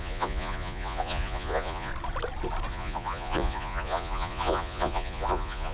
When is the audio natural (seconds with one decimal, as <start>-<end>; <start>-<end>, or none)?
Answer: 1.9-2.7